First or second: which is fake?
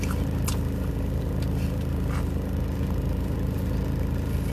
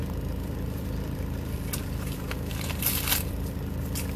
second